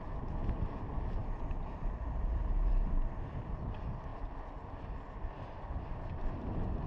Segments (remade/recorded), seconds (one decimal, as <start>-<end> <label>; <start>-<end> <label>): 0.0-4.1 recorded; 4.1-6.9 remade